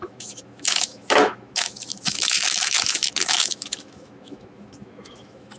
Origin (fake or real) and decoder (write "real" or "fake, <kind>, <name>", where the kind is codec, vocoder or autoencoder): fake, autoencoder, DAC-VAE